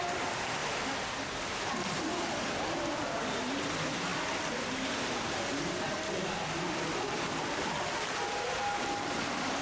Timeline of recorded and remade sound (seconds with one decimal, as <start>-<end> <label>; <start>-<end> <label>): 0.0-9.6 recorded